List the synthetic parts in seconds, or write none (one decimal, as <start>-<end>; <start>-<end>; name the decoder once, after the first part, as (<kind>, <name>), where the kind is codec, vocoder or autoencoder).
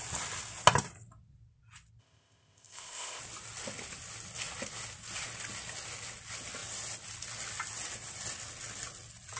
2.0-3.2 (codec, ZipCodec)